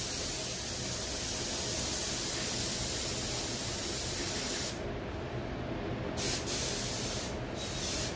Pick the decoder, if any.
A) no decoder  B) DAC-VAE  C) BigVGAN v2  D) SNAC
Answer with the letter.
A